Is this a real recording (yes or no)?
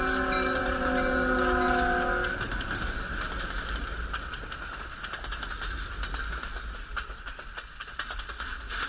yes